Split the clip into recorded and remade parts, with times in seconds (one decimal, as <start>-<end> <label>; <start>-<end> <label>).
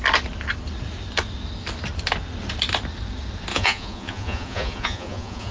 0.0-3.5 recorded; 3.5-5.5 remade